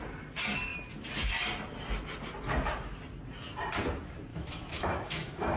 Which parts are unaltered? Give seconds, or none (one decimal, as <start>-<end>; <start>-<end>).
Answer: 0.0-4.3